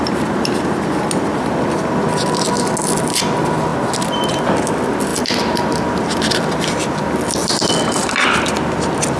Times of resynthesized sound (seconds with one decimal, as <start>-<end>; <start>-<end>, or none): 5.1-6.8; 7.4-8.5